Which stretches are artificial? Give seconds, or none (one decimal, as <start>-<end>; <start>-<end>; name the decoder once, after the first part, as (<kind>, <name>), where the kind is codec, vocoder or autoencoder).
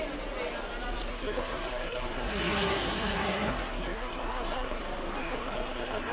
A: 1.1-4.8 (codec, SNAC); 5.2-6.1